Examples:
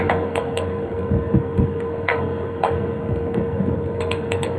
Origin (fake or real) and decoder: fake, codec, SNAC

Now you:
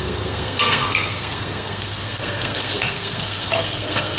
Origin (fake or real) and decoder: fake, codec, SNAC